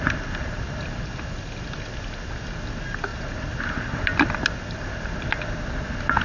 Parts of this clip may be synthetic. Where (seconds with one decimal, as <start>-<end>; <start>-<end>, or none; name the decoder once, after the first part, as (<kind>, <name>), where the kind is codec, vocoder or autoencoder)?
none